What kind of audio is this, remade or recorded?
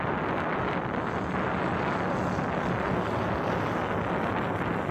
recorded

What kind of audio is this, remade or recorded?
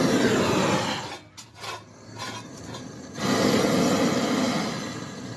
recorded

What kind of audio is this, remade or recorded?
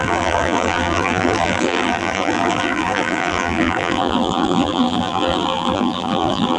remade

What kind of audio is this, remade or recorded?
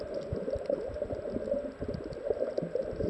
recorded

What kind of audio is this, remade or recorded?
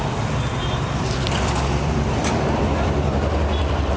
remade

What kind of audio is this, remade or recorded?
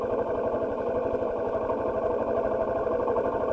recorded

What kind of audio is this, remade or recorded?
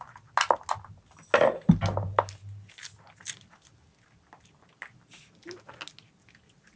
recorded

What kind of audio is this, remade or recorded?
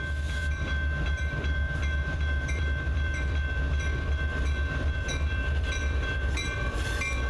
remade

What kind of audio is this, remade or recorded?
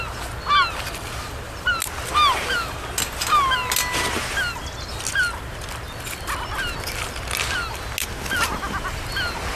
recorded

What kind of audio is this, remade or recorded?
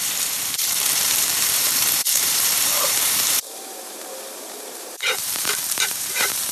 remade